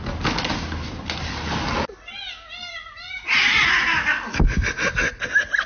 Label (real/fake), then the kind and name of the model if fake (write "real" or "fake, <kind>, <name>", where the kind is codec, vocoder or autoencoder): real